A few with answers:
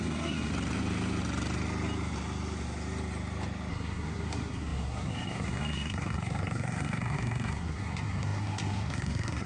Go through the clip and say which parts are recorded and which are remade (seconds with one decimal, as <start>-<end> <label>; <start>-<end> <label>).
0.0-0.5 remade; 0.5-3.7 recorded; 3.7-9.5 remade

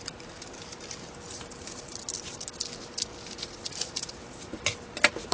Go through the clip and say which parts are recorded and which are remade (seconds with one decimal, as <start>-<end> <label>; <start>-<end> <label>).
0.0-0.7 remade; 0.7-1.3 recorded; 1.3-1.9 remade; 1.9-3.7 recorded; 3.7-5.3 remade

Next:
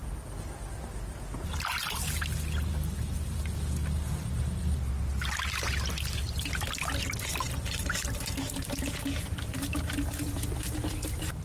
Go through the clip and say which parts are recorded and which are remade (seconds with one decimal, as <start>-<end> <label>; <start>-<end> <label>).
0.0-11.4 recorded